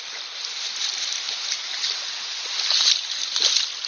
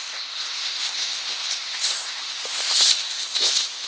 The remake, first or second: second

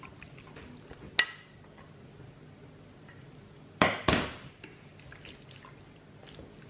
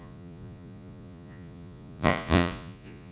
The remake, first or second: second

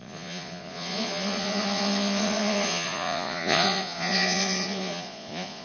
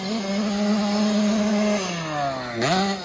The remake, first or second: first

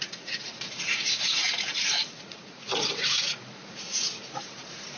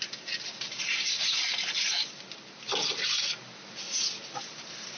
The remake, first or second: first